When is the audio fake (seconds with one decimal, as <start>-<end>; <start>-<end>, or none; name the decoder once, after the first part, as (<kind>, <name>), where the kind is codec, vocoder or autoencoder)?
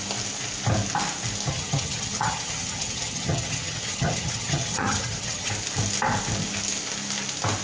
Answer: 1.5-5.5 (vocoder, HiFi-GAN)